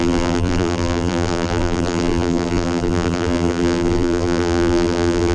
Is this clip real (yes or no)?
no